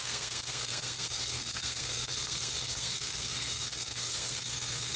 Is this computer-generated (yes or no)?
yes